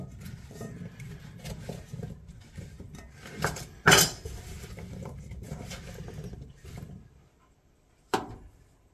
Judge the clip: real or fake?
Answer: real